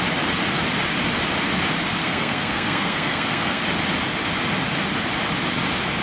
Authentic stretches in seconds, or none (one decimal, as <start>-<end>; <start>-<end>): 0.0-2.0; 3.6-6.0